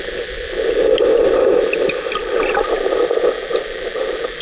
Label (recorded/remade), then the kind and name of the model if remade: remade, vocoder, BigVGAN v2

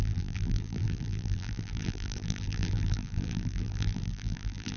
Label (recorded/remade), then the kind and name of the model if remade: remade, vocoder, BigVGAN v2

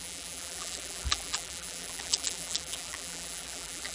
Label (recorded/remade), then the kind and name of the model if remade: remade, vocoder, BigVGAN v2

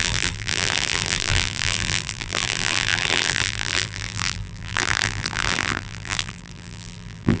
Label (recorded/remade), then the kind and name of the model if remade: remade, vocoder, BigVGAN v2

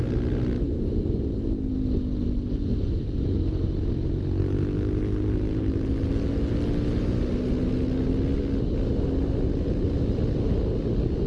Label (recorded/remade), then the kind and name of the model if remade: recorded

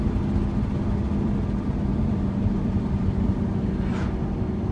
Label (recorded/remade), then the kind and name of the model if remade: recorded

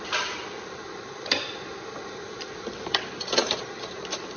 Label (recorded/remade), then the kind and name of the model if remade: remade, vocoder, BigVGAN v2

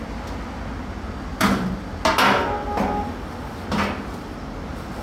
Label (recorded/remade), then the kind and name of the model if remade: recorded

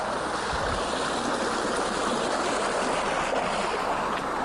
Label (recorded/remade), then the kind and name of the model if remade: recorded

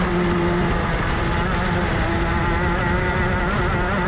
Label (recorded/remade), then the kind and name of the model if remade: recorded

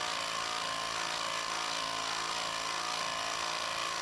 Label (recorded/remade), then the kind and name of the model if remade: recorded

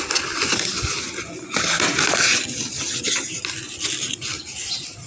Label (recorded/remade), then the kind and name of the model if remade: recorded